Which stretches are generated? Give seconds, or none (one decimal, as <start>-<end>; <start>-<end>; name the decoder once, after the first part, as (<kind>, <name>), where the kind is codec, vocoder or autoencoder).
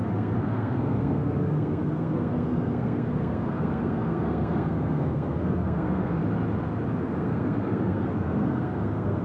0.0-6.2 (codec, SNAC); 7.0-9.2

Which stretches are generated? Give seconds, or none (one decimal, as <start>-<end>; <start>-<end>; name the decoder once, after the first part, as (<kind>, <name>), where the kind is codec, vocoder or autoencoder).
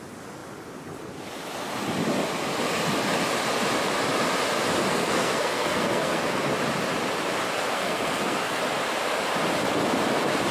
4.9-6.5 (codec, SNAC); 7.7-8.6